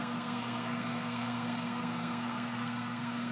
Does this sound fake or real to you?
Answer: fake